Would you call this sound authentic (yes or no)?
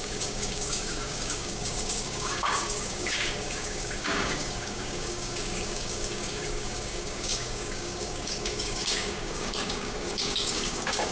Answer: no